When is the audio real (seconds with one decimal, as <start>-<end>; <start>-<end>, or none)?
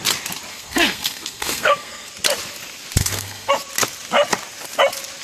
0.0-0.5; 2.1-3.0; 3.5-5.2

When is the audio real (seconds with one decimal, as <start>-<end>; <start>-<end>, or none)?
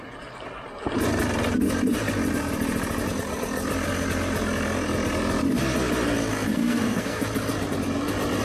0.0-6.5; 7.2-8.4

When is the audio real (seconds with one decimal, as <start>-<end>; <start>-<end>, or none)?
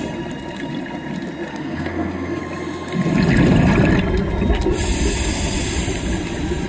0.0-1.5; 2.4-6.7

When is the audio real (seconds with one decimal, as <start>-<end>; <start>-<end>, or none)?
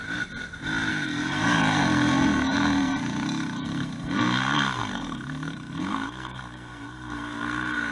0.0-0.9